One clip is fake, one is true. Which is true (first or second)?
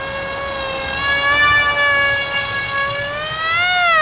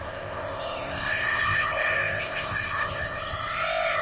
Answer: first